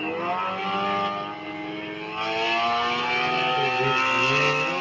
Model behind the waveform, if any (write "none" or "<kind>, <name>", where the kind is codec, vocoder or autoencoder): none